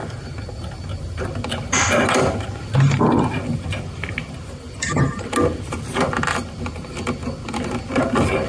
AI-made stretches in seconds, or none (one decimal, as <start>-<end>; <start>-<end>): none